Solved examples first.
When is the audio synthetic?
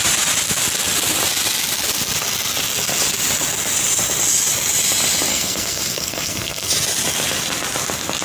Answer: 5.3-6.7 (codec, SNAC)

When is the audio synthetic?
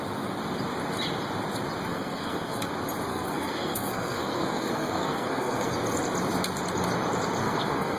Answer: 1.9-2.7 (codec, SNAC); 3.1-5.7; 7.4-8.0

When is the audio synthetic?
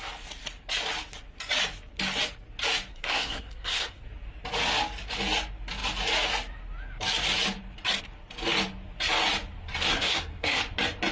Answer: 2.9-4.0 (codec, SNAC); 9.9-10.6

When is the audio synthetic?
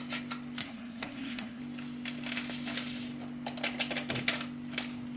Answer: 0.6-1.6 (codec, SNAC)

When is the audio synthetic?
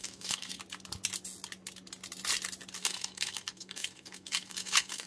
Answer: 0.0-0.6 (codec, SNAC); 2.8-5.1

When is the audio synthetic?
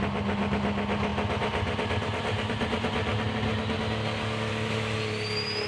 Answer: none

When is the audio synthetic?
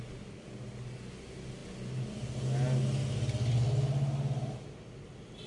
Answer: none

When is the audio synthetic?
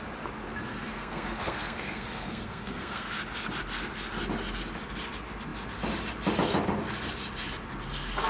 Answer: 0.7-3.2 (codec, SNAC)